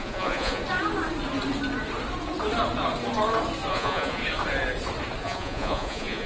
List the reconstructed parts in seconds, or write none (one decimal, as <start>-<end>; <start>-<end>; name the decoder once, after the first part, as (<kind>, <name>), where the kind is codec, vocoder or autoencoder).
0.0-0.6 (vocoder, Vocos); 3.7-4.2; 5.2-6.3